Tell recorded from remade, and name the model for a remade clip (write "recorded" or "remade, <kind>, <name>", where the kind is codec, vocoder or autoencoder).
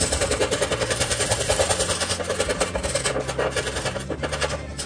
remade, vocoder, BigVGAN v2